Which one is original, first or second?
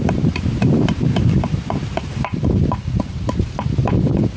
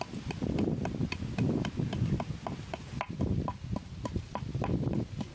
second